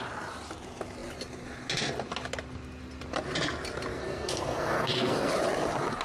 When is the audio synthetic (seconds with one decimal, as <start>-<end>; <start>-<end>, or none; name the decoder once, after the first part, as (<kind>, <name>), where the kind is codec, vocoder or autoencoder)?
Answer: 3.9-5.3 (codec, SNAC)